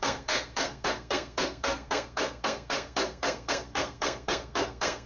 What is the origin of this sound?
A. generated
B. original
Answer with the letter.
A